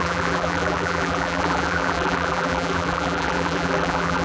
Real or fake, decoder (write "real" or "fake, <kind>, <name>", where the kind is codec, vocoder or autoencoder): fake, vocoder, BigVGAN v2